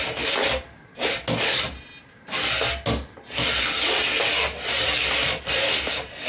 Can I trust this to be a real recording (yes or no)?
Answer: yes